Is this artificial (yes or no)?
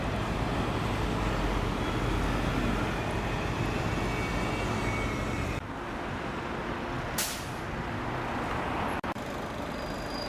no